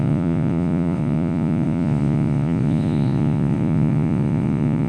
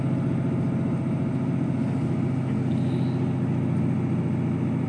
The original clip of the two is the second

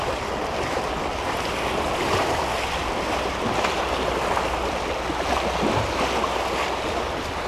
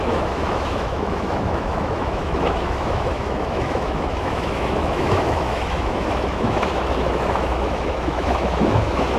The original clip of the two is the first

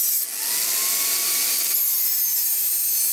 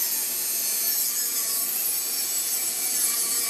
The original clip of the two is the first